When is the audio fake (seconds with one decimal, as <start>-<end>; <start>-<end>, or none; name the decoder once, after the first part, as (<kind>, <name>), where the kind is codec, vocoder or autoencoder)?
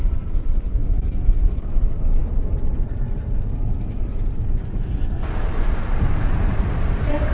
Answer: 0.0-0.8 (vocoder, BigVGAN v2); 1.8-2.2; 2.7-7.3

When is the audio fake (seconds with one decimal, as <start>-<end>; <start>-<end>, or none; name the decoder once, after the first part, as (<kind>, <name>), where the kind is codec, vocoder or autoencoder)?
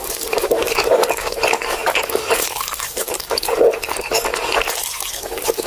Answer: 0.0-4.3 (codec, DAC); 5.1-5.7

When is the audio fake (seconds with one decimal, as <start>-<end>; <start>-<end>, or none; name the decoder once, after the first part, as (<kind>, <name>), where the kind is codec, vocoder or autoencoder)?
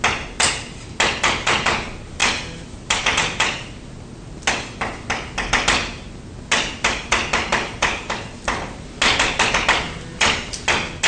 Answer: none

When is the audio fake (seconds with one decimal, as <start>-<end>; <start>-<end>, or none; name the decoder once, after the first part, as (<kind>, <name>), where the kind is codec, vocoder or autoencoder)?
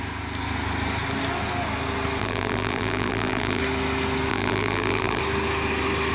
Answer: 2.2-3.6 (vocoder, BigVGAN v2); 4.3-5.2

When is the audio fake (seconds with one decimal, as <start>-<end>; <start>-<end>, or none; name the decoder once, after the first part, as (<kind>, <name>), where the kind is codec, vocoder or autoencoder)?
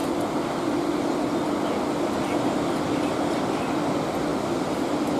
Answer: none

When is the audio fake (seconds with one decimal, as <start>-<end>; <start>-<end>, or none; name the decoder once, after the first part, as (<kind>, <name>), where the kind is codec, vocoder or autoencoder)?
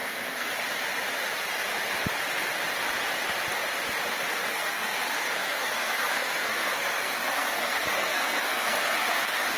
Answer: 0.0-0.5 (codec, SNAC); 4.5-9.6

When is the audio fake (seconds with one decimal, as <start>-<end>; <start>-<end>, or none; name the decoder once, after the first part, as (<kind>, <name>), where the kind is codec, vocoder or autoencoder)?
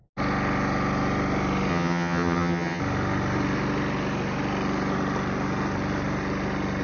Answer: 1.7-2.8 (vocoder, HiFi-GAN)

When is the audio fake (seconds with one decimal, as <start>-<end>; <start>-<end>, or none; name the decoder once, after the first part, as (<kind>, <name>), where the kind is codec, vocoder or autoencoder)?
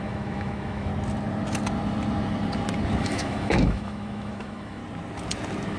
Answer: 0.0-0.9 (autoencoder, DAC-VAE); 3.0-4.8